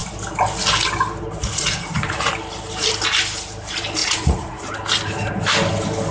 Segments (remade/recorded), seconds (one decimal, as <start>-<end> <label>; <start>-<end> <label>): 0.0-1.4 recorded; 1.4-2.3 remade; 2.3-4.0 recorded; 4.0-4.6 remade; 4.6-6.1 recorded